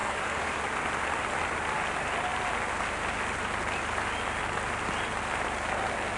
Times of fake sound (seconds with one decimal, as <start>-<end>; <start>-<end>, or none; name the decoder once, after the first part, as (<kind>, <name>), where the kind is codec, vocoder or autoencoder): 0.0-0.6 (codec, DAC)